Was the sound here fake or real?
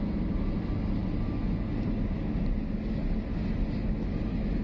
real